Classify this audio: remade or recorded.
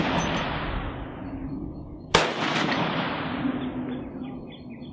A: recorded